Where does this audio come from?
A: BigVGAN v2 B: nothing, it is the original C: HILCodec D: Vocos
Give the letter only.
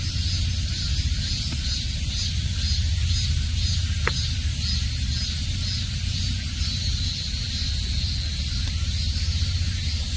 B